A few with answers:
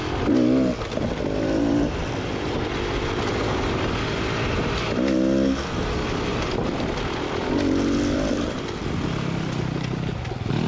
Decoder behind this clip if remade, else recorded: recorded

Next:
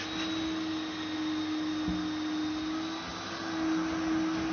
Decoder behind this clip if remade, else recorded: recorded